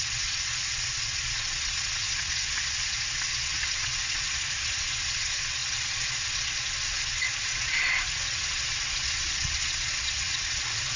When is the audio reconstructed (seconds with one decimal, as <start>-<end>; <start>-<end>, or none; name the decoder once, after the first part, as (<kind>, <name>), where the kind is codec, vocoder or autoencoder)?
0.0-11.0 (vocoder, Vocos)